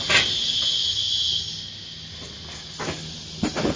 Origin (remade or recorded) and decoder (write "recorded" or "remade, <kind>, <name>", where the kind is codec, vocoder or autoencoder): recorded